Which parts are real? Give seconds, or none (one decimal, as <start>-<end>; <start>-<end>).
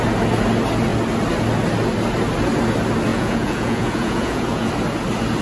0.0-3.1; 4.7-5.4